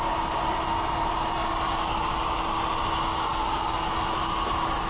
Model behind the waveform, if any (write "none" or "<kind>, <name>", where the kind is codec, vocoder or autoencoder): none